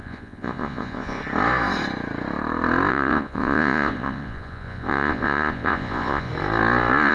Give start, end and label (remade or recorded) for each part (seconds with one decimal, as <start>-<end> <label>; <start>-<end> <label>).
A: 0.0-1.2 remade; 1.2-2.9 recorded; 2.9-6.3 remade; 6.3-7.1 recorded